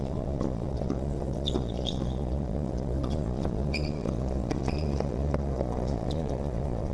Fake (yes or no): yes